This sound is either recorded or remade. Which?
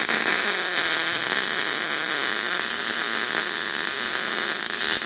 recorded